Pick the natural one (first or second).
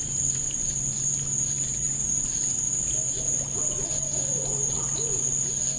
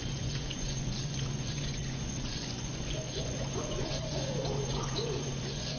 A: first